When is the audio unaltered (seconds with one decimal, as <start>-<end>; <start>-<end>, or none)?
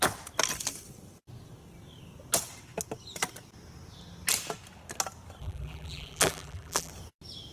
0.0-5.4; 6.9-7.5